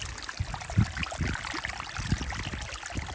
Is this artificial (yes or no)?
no